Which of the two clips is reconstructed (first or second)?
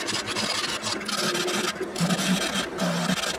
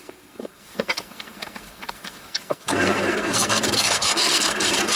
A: second